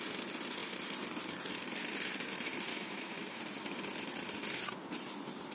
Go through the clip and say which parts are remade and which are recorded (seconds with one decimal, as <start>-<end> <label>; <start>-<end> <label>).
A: 0.0-2.7 recorded; 2.7-3.4 remade; 3.4-5.5 recorded